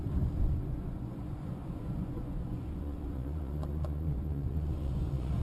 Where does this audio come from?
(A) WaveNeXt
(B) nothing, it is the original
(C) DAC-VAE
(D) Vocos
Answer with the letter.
D